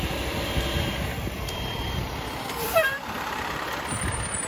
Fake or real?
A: fake